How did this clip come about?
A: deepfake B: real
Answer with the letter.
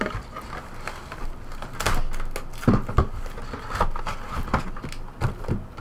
B